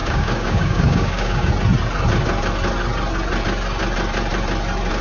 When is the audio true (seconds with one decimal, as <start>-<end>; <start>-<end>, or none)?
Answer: 1.5-5.0

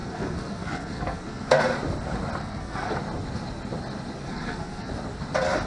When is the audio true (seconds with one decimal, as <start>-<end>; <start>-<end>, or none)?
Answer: 1.6-2.4; 2.9-4.2; 4.9-5.7

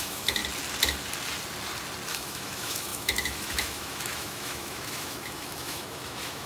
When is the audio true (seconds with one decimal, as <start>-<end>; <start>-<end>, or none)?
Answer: 0.4-2.1

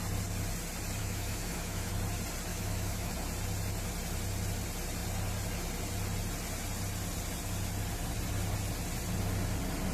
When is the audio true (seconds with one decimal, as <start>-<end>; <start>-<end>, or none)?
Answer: 0.0-1.0; 1.9-2.5; 3.1-9.9

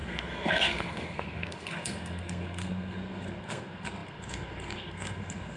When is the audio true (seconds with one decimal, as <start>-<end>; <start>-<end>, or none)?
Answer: none

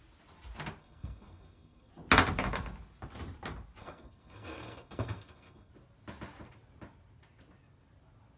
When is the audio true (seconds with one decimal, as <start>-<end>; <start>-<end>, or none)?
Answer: 0.0-0.8; 1.9-3.8; 5.7-8.4